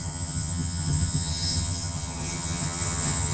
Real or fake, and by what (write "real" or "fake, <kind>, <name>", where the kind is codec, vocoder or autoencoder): fake, vocoder, HiFi-GAN